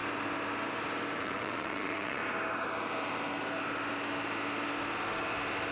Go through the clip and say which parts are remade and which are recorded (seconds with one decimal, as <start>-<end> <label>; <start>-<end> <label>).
0.0-1.2 recorded; 1.2-2.2 remade; 2.2-5.7 recorded